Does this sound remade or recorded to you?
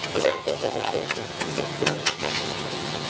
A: remade